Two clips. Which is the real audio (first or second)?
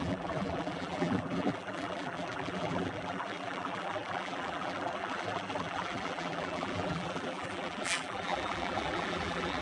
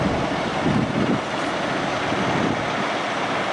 second